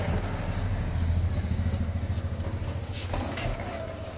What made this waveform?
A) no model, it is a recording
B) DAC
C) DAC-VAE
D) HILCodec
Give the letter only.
B